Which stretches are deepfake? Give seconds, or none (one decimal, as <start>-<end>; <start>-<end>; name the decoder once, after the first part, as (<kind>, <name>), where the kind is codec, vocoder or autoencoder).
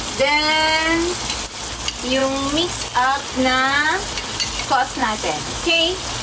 5.0-5.8 (autoencoder, DAC-VAE)